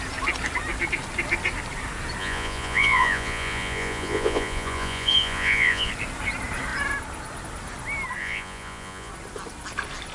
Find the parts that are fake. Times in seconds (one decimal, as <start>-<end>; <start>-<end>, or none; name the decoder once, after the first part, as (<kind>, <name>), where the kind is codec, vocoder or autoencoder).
2.2-5.9 (vocoder, Vocos); 8.2-9.1

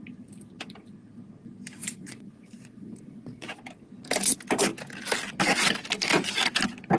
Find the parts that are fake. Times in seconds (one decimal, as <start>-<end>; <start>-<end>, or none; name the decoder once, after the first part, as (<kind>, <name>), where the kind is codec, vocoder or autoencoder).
1.8-3.5 (vocoder, Vocos)

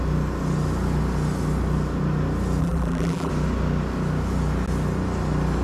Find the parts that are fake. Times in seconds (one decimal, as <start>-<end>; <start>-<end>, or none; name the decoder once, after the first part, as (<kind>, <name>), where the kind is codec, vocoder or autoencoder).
2.6-3.3 (vocoder, BigVGAN v2)

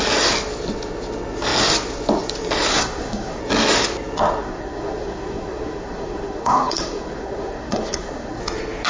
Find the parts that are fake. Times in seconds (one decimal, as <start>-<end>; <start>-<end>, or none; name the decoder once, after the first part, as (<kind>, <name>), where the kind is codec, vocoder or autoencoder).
2.7-3.4 (codec, SNAC); 4.4-8.4

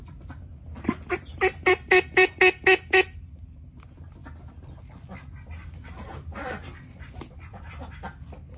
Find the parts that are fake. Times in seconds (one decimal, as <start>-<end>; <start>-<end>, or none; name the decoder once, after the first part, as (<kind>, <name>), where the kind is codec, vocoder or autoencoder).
1.3-2.3 (vocoder, BigVGAN v2)

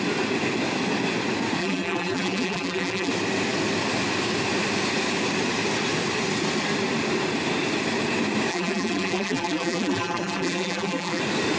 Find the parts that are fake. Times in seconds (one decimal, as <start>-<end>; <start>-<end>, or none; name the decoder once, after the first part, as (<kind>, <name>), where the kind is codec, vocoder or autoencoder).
1.6-3.1 (vocoder, BigVGAN v2); 8.5-11.2

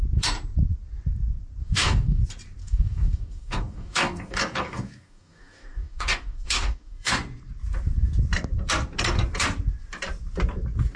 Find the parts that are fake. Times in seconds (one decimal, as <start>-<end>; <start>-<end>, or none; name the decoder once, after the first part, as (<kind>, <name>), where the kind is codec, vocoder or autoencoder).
1.6-2.2 (codec, DAC); 2.6-7.1

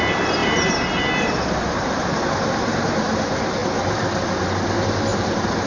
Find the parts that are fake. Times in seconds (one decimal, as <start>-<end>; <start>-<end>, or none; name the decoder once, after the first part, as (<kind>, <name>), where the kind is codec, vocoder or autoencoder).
0.4-3.2 (vocoder, BigVGAN v2); 5.1-5.7